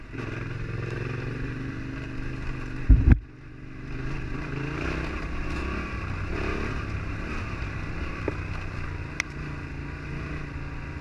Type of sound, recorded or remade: recorded